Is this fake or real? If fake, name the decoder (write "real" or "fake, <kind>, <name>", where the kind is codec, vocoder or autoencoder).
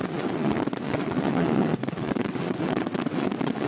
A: fake, vocoder, WaveNeXt